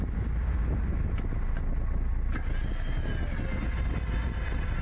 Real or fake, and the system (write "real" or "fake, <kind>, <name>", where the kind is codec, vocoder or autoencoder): real